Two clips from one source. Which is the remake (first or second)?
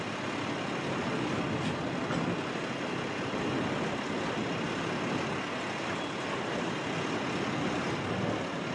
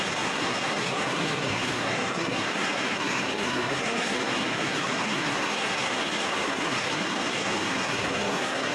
second